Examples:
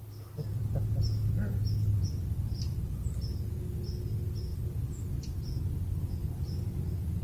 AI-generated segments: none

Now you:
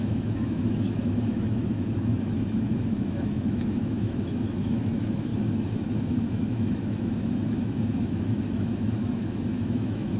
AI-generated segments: 0.0-5.3 (autoencoder, DAC-VAE); 6.0-10.2

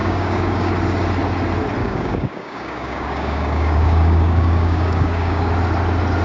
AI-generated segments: 0.0-0.7 (codec, DAC); 1.8-5.5

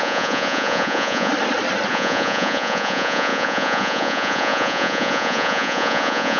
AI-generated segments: 0.0-1.3 (vocoder, Vocos); 1.9-6.4

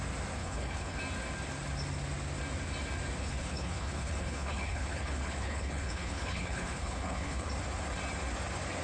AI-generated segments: 0.4-1.0 (codec, HILCodec); 3.2-7.5

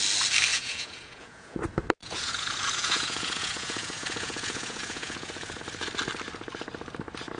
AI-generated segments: 0.5-1.6 (vocoder, Vocos); 2.0-5.6